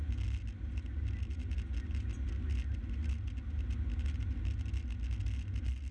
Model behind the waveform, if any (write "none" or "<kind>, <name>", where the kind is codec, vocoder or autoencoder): none